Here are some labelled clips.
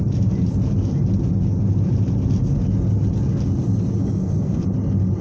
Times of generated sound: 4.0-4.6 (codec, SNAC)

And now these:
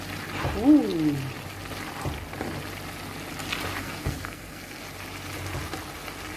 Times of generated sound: 3.8-4.8 (codec, SNAC)